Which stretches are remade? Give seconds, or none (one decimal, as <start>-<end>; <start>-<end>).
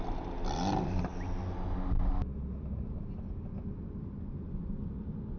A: none